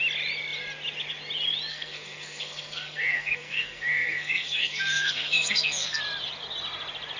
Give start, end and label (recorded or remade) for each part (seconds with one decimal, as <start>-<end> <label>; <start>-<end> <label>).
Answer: 0.0-1.7 recorded; 1.7-6.0 remade; 6.0-7.2 recorded

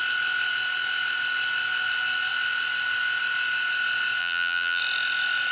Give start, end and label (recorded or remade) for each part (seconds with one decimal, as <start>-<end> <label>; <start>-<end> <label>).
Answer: 0.0-4.2 recorded; 4.2-4.8 remade; 4.8-5.5 recorded

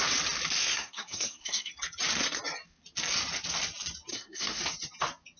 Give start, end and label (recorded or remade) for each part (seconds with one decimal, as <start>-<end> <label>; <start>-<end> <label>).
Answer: 0.0-0.6 recorded; 0.6-1.7 remade; 1.7-4.1 recorded; 4.1-4.6 remade; 4.6-5.4 recorded

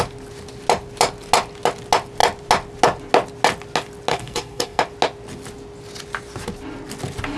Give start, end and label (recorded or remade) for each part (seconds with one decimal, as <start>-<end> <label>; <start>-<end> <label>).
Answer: 0.0-4.1 recorded; 4.1-4.8 remade; 4.8-7.4 recorded

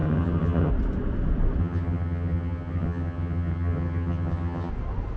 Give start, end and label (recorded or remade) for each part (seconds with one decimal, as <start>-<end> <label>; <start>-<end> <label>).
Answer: 0.0-0.7 remade; 0.7-1.6 recorded; 1.6-4.7 remade; 4.7-5.2 recorded

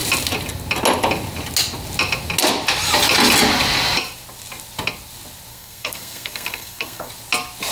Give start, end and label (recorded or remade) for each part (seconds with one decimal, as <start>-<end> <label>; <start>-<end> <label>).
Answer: 0.0-5.5 recorded; 5.5-7.1 remade; 7.1-7.7 recorded

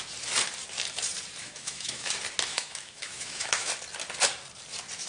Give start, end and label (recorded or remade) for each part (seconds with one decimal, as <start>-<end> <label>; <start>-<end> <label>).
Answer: 0.0-1.4 recorded; 1.4-2.1 remade; 2.1-2.5 recorded; 2.5-3.7 remade; 3.7-5.1 recorded